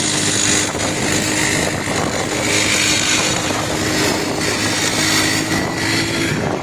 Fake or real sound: real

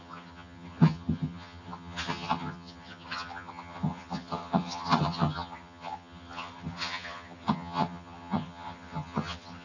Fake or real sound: fake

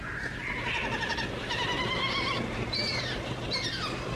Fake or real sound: real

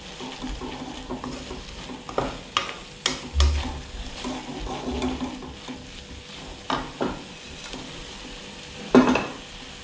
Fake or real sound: real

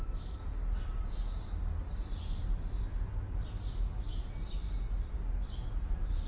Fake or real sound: real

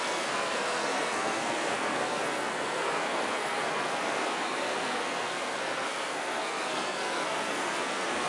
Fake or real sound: fake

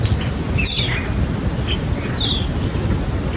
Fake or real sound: real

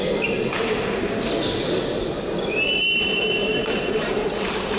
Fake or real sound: real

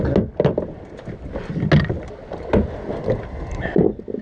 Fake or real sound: real